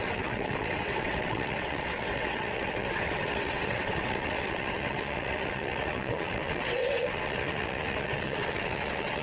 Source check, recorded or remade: remade